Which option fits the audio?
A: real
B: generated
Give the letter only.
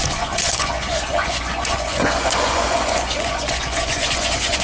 B